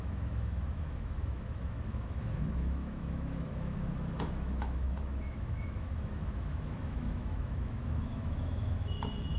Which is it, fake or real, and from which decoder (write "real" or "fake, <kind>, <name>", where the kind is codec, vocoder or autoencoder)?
fake, autoencoder, DAC-VAE